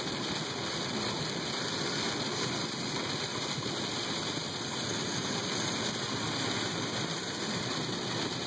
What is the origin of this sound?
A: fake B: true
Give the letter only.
B